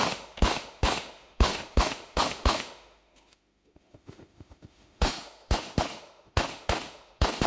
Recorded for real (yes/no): no